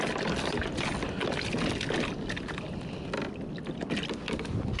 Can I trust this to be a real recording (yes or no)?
yes